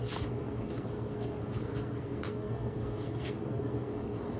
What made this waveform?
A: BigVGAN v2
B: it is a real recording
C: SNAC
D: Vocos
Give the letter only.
C